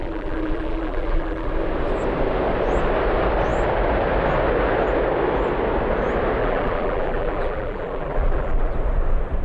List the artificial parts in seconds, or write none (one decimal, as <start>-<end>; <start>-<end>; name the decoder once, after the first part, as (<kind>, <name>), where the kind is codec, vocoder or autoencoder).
0.0-1.5 (vocoder, BigVGAN v2); 6.4-8.7